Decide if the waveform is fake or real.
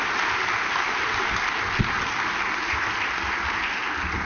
real